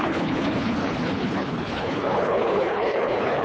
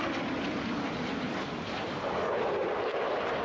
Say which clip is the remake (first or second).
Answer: first